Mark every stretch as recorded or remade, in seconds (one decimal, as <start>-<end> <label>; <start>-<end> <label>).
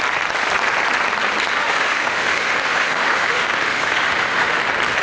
0.0-1.6 recorded; 1.6-4.6 remade; 4.6-5.0 recorded